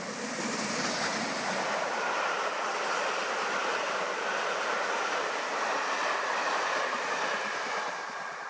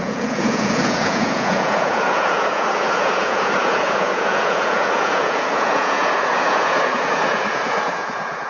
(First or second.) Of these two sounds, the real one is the first